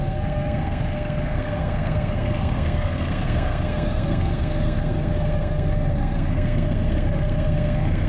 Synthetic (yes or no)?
yes